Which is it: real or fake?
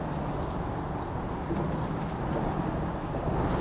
real